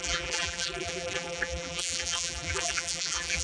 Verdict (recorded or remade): remade